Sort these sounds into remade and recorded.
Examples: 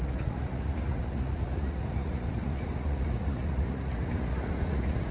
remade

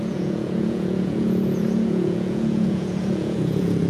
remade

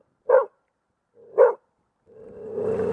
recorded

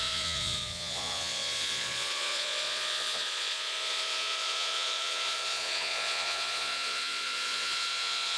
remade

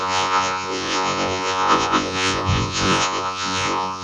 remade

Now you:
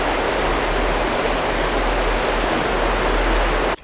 recorded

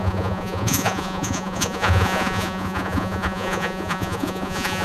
remade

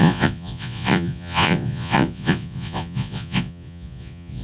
remade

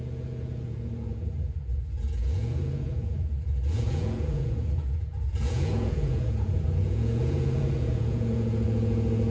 remade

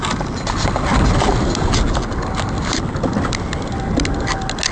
recorded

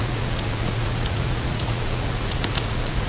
remade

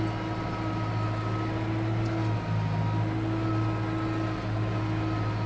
recorded